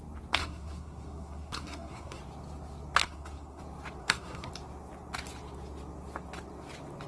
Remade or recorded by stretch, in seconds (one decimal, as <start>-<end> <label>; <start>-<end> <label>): 0.0-0.4 recorded; 0.4-2.2 remade; 2.2-3.0 recorded; 3.0-3.6 remade; 3.6-4.0 recorded; 4.0-4.5 remade; 4.5-7.1 recorded